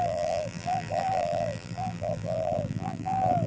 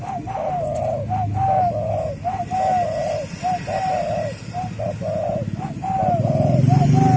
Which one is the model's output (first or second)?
first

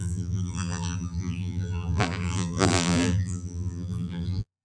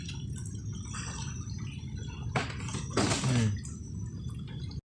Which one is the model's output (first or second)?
first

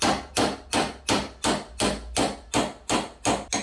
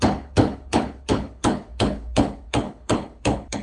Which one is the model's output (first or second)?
second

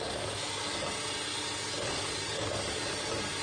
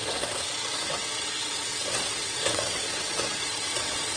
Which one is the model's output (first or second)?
second